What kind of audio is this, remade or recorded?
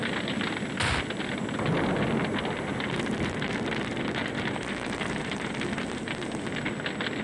recorded